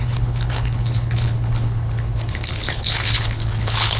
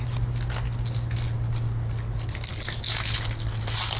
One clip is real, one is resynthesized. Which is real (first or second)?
second